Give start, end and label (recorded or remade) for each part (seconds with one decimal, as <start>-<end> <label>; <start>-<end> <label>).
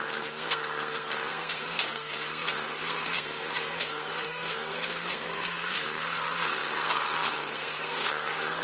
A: 0.0-8.6 remade